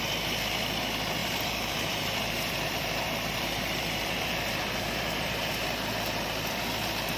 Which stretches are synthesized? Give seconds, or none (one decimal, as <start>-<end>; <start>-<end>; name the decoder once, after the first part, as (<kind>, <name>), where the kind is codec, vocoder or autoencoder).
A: 1.2-5.5 (vocoder, BigVGAN v2)